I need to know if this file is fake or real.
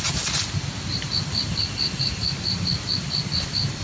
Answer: real